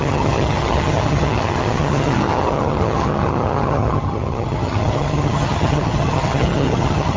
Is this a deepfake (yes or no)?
yes